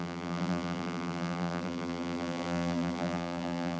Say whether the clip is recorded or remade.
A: remade